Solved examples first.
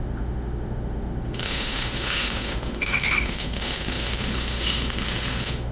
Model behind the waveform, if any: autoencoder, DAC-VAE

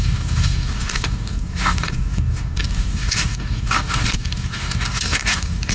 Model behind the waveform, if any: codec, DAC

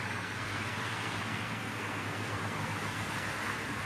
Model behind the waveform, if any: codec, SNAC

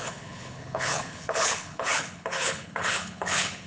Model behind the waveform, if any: codec, HILCodec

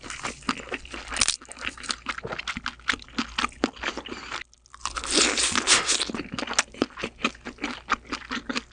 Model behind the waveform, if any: none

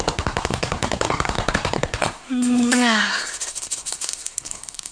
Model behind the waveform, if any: codec, SNAC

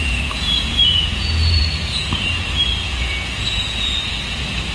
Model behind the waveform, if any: vocoder, Vocos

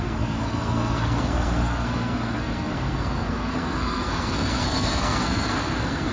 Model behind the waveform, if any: codec, SNAC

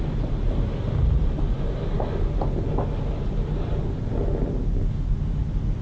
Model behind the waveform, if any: none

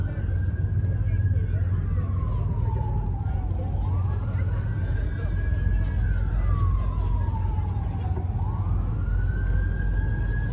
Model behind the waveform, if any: none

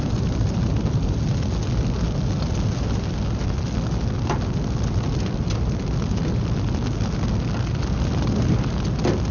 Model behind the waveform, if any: none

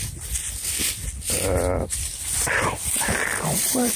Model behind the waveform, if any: vocoder, BigVGAN v2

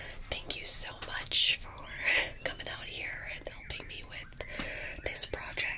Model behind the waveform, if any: none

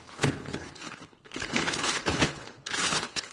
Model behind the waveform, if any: codec, HILCodec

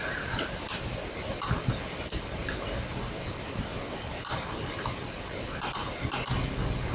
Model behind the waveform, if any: none